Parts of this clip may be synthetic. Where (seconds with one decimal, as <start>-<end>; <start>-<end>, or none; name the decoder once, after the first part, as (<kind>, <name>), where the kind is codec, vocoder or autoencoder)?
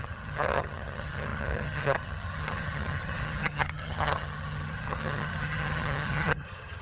0.0-6.8 (vocoder, HiFi-GAN)